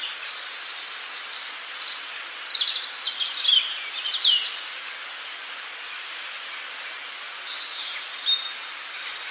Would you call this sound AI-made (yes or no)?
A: no